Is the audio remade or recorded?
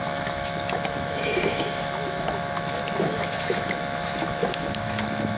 remade